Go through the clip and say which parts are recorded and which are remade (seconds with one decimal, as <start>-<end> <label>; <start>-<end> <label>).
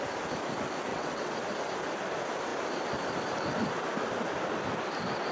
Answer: 0.0-0.9 recorded; 0.9-1.4 remade; 1.4-5.3 recorded